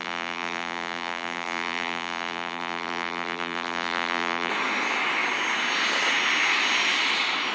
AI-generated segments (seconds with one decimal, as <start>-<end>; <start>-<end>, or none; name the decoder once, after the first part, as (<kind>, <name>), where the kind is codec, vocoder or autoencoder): 0.0-4.5 (vocoder, BigVGAN v2)